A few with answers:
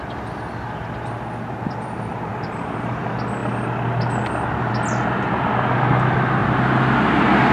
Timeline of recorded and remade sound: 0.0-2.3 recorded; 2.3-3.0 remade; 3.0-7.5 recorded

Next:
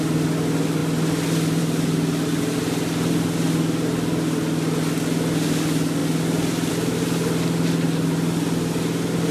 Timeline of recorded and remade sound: 0.0-9.3 recorded

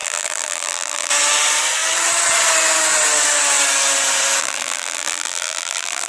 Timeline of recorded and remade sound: 0.0-1.1 remade; 1.1-4.4 recorded; 4.4-6.1 remade

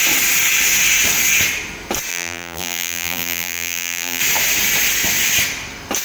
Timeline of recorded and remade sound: 0.0-2.1 recorded; 2.1-4.2 remade; 4.2-6.0 recorded

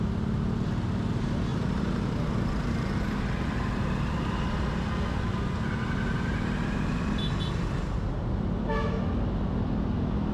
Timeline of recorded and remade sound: 0.0-1.5 recorded; 1.5-3.2 remade; 3.2-10.3 recorded

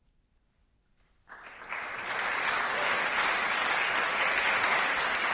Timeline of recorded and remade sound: 0.0-0.6 remade; 0.6-3.8 recorded; 3.8-5.3 remade

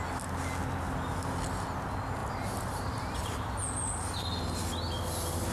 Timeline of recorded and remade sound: 0.0-2.2 recorded; 2.2-4.2 remade; 4.2-5.5 recorded

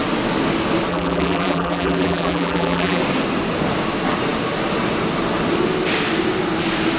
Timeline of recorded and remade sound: 0.0-0.9 recorded; 0.9-3.0 remade; 3.0-7.0 recorded